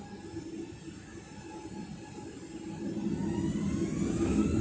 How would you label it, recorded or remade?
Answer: recorded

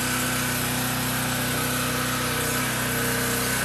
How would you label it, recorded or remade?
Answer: recorded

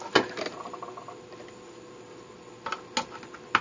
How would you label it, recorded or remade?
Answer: recorded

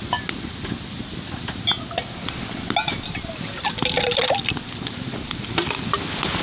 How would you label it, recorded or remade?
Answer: recorded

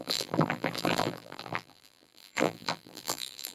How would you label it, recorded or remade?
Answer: remade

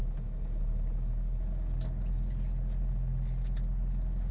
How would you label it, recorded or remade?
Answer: recorded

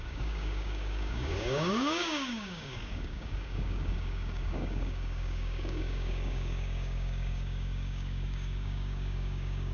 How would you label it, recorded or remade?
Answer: remade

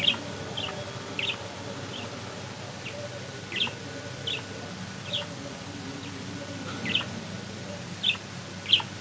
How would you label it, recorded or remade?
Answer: recorded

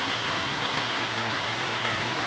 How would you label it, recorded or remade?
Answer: remade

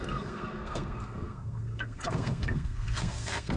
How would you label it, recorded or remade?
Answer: remade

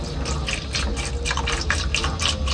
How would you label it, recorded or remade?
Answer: recorded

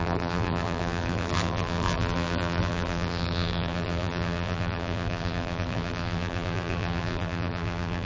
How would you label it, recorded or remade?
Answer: remade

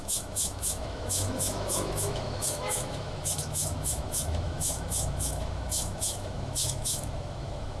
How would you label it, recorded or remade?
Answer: remade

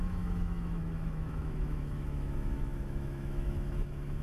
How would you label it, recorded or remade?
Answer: remade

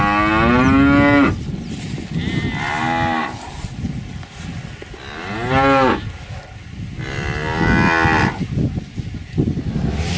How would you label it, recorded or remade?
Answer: recorded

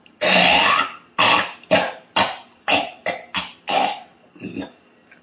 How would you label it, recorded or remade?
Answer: recorded